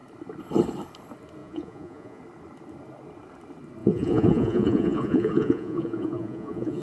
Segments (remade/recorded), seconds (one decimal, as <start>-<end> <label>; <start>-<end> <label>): 0.0-1.4 recorded; 1.4-2.2 remade; 2.2-3.8 recorded; 3.8-6.8 remade